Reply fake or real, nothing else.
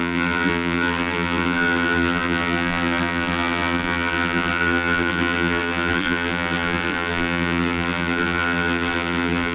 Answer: fake